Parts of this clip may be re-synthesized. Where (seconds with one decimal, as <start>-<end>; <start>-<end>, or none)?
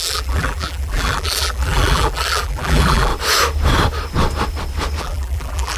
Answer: 0.0-3.1; 5.0-5.8